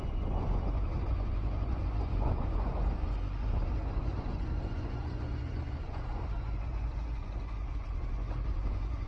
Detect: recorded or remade remade